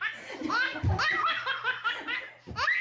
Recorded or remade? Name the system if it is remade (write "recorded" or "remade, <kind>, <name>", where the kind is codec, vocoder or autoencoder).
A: recorded